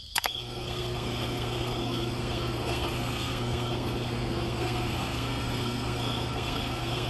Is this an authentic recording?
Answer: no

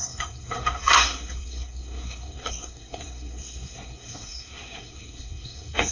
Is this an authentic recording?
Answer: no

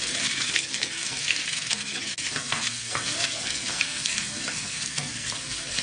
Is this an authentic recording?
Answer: no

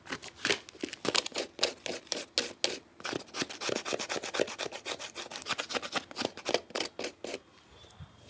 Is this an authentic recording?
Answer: yes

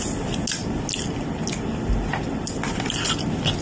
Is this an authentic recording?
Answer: yes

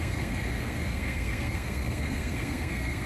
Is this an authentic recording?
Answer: no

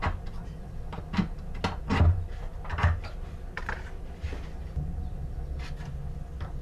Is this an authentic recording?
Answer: yes